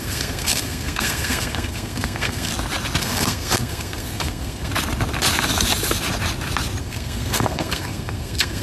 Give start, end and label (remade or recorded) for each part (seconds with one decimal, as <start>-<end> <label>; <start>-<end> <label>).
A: 0.0-2.5 remade; 2.5-3.0 recorded; 3.0-4.7 remade; 4.7-6.8 recorded; 6.8-8.6 remade